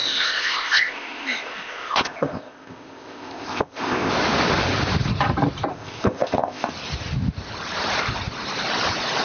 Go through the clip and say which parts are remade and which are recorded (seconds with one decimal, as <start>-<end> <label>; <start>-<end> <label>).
0.0-4.1 remade; 4.1-5.7 recorded; 5.7-6.7 remade; 6.7-9.2 recorded